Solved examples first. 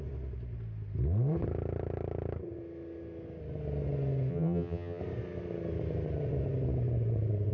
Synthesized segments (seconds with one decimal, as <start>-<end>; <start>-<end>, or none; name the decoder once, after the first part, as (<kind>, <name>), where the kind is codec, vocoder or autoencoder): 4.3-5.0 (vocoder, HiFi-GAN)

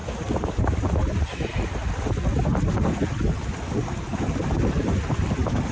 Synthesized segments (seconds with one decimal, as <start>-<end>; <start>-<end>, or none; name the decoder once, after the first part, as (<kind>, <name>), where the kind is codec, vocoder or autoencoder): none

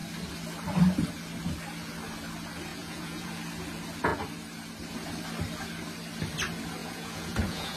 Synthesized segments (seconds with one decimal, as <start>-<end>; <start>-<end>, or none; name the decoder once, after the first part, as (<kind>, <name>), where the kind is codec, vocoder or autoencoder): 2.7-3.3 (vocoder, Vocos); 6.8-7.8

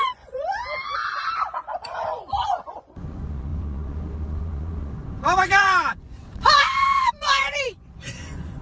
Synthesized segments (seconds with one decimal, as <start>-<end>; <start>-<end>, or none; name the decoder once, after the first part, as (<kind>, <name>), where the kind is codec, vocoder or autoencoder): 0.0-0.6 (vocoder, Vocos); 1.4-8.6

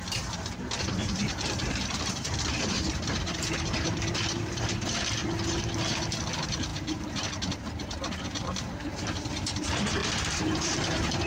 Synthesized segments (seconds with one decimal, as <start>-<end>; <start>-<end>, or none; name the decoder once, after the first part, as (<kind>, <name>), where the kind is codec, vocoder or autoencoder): 0.0-5.2 (vocoder, BigVGAN v2); 6.3-11.3

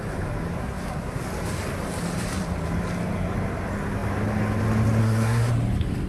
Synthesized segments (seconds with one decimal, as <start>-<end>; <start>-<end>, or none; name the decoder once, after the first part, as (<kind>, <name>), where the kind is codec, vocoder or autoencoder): 0.6-1.2 (codec, SNAC); 5.0-5.5